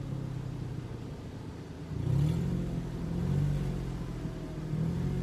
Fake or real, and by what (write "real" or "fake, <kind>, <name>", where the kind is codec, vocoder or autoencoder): real